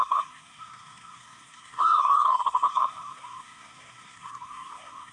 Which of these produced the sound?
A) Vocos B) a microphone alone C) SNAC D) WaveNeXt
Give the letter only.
C